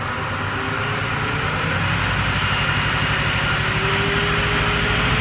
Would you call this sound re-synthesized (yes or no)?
no